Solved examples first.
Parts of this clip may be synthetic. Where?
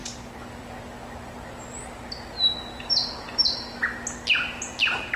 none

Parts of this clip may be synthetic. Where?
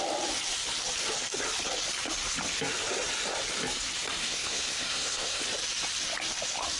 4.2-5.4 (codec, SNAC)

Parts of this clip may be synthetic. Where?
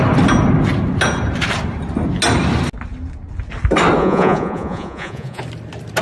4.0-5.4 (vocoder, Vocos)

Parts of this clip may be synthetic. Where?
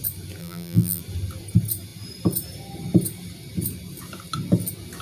0.4-1.0 (vocoder, BigVGAN v2)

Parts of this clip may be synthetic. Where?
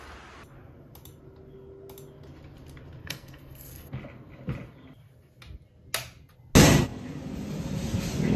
3.0-3.9 (codec, SNAC)